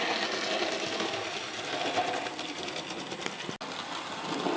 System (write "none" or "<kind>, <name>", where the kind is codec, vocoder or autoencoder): none